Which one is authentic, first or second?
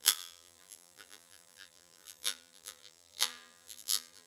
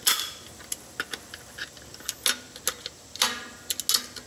second